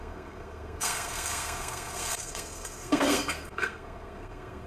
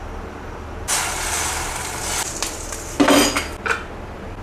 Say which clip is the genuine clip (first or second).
second